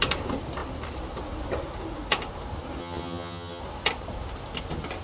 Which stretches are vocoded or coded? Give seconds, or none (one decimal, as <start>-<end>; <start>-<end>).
2.8-3.6